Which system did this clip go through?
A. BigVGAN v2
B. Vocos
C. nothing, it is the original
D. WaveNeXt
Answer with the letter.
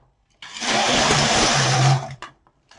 A